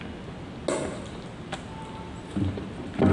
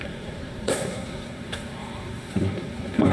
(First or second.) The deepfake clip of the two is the second